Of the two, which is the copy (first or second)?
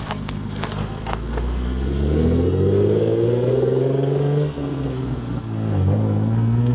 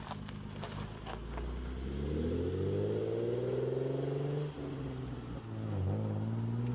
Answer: first